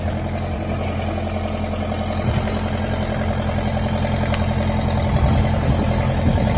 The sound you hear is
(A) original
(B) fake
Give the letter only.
A